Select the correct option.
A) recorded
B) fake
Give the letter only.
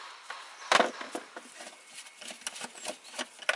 A